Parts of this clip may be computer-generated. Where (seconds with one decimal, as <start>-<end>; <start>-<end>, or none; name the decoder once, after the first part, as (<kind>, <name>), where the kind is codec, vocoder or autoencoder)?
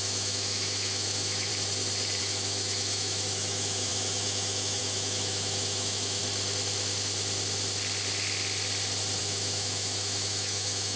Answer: 0.0-1.5 (autoencoder, DAC-VAE); 2.2-6.2; 9.2-11.0